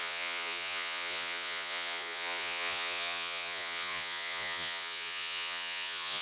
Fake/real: fake